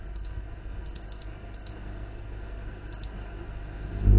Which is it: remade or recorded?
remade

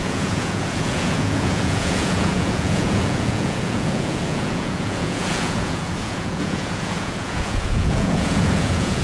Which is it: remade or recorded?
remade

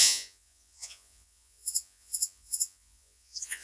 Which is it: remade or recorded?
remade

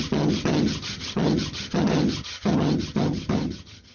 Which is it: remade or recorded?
remade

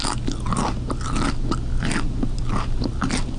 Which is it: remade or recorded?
recorded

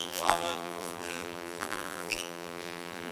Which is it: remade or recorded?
remade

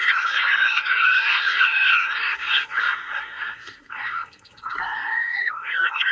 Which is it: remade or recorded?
remade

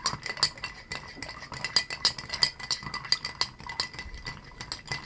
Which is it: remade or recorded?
recorded